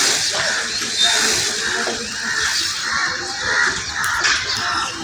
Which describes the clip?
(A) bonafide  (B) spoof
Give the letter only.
A